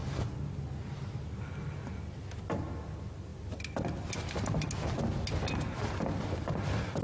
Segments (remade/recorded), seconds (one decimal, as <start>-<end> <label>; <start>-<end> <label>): 0.0-7.0 recorded

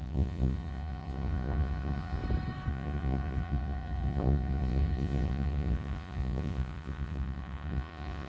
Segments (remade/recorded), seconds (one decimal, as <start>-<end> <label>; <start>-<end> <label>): 0.0-2.2 remade; 2.2-2.7 recorded; 2.7-8.3 remade

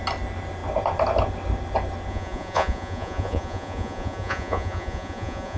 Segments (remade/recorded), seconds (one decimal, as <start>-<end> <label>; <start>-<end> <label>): 0.0-2.1 recorded; 2.1-5.6 remade

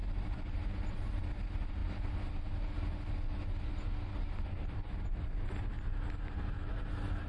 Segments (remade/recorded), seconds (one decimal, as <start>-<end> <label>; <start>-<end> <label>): 0.0-7.3 recorded

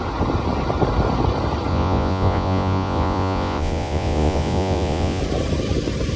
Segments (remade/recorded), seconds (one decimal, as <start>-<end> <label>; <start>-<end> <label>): 0.0-1.7 recorded; 1.7-5.2 remade; 5.2-6.2 recorded